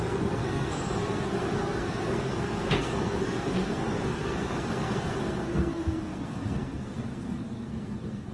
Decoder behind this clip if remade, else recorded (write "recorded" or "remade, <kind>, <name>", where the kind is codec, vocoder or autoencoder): remade, codec, SNAC